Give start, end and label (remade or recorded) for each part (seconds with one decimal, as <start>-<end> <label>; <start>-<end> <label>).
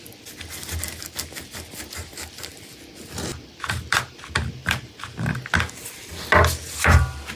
0.0-4.6 recorded; 4.6-5.3 remade; 5.3-7.4 recorded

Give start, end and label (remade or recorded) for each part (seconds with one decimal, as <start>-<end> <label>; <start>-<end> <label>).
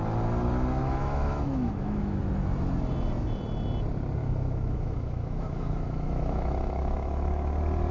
0.0-0.8 recorded; 0.8-2.2 remade; 2.2-4.2 recorded; 4.2-7.5 remade; 7.5-7.9 recorded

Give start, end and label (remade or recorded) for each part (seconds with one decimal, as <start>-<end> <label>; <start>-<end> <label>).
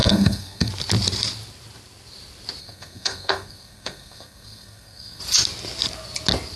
0.0-0.7 remade; 0.7-2.6 recorded; 2.6-5.2 remade; 5.2-6.6 recorded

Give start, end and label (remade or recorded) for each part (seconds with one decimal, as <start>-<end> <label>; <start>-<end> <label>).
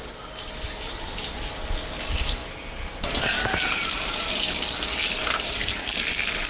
0.0-6.5 recorded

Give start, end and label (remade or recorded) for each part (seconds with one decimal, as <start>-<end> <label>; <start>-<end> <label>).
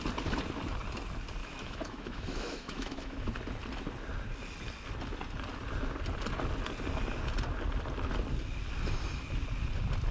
0.0-1.4 recorded; 1.4-3.3 remade; 3.3-10.1 recorded